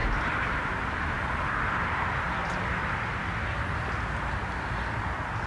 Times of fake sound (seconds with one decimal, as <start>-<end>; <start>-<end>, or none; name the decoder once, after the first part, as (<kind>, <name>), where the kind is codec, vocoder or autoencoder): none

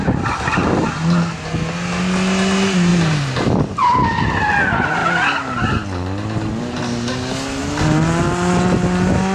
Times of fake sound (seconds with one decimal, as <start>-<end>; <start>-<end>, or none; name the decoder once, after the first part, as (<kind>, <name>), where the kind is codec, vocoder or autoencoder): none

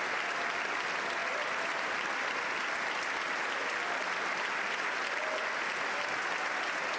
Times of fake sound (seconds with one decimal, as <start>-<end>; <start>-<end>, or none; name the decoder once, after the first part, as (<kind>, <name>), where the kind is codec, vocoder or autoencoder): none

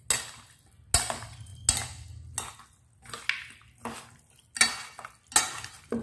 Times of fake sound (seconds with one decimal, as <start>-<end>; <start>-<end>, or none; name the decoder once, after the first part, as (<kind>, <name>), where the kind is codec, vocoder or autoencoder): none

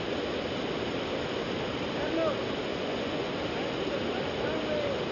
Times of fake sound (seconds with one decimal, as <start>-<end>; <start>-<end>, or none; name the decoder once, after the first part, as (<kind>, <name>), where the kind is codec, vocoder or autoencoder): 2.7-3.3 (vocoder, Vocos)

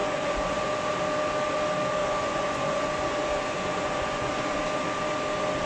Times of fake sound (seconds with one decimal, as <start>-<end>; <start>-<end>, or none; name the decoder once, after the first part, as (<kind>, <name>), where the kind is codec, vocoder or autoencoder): 0.0-0.6 (vocoder, Vocos); 2.0-4.6

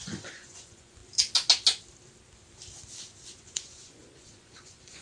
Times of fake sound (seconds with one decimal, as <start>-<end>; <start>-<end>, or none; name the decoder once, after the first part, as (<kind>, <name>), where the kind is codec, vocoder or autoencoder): 0.0-1.0 (vocoder, Vocos); 3.4-5.0